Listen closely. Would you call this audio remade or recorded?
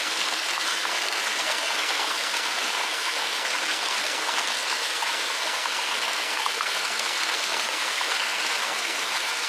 remade